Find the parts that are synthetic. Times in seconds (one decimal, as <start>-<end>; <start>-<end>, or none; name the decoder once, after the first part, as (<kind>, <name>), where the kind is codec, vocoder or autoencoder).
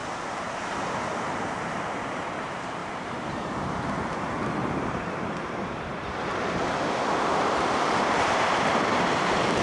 1.7-6.3 (vocoder, BigVGAN v2); 7.2-9.6